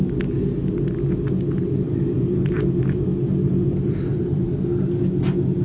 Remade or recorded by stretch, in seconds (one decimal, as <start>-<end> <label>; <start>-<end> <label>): 0.0-1.6 recorded; 1.6-4.5 remade; 4.5-5.6 recorded